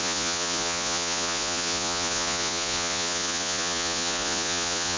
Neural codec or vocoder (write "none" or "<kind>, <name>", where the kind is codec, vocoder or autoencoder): vocoder, Vocos